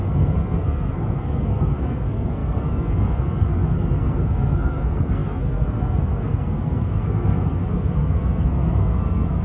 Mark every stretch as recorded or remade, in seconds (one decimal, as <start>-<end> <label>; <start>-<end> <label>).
0.0-9.4 remade